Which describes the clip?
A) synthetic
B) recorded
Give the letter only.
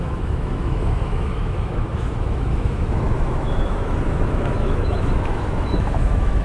A